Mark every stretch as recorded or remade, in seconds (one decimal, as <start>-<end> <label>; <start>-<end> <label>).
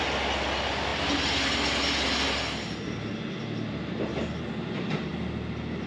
0.0-5.9 recorded